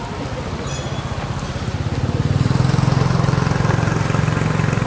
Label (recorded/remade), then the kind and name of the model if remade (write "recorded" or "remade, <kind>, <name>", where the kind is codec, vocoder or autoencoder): recorded